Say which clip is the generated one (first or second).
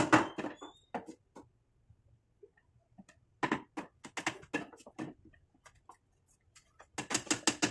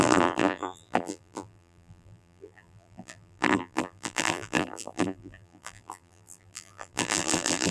second